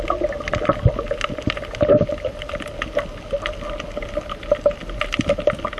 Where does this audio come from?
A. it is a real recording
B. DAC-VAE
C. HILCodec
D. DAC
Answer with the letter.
A